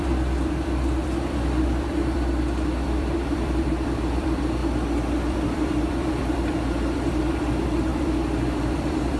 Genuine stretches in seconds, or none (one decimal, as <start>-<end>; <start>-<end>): 4.6-5.3